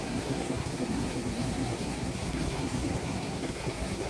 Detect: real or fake fake